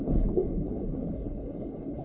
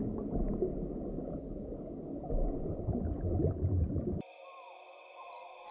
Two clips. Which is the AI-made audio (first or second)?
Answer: first